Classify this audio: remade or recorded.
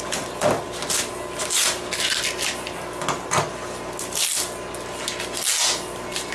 recorded